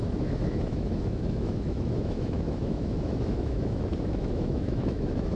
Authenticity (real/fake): fake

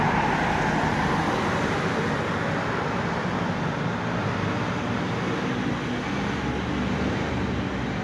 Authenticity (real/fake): real